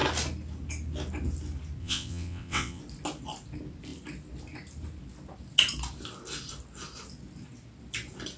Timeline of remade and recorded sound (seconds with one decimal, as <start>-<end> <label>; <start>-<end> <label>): 0.0-1.8 recorded; 1.8-2.8 remade; 2.8-8.4 recorded